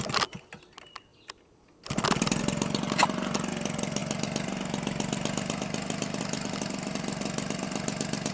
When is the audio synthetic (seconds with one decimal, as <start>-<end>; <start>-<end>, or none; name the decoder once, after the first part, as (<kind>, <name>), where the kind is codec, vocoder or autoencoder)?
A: none